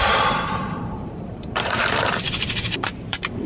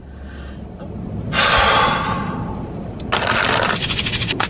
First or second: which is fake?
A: first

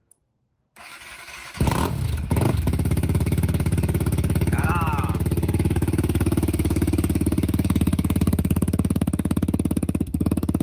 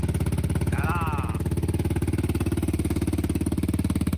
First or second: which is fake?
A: first